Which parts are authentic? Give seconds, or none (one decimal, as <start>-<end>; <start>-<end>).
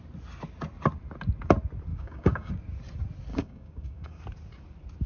0.0-1.9; 2.5-3.3; 4.2-5.1